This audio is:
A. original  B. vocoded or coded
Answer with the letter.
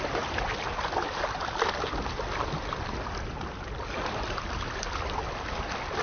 A